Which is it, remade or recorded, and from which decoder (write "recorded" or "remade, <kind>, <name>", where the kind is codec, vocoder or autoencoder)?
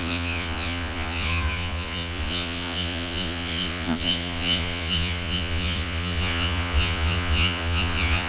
remade, vocoder, Vocos